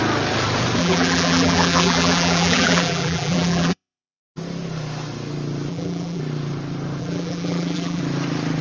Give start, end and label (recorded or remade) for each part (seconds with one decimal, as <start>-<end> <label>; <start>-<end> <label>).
0.0-0.8 recorded; 0.8-4.2 remade; 4.2-5.7 recorded; 5.7-6.2 remade; 6.2-7.0 recorded; 7.0-8.0 remade; 8.0-8.6 recorded